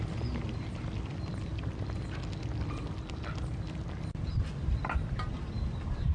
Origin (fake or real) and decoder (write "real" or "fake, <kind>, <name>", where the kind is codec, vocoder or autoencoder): real